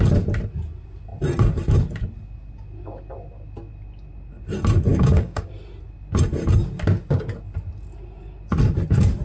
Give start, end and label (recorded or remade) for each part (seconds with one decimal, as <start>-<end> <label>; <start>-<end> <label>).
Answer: 0.0-4.9 recorded; 4.9-5.5 remade; 5.5-9.2 recorded